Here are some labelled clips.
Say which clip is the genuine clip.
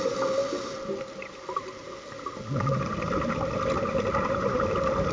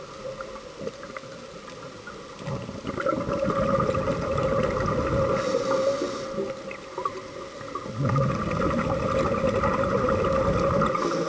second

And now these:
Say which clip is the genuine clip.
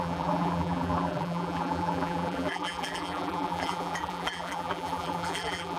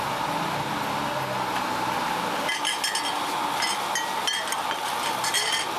second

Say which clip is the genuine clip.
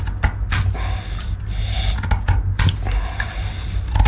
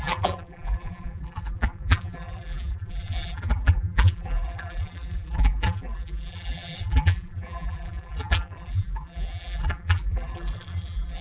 first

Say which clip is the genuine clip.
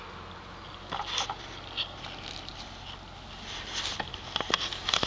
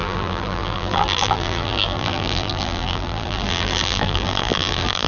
first